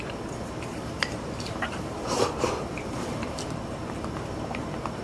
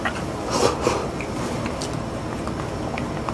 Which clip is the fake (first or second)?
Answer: first